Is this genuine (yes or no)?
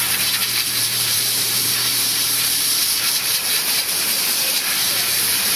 no